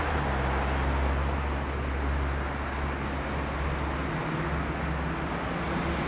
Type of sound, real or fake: real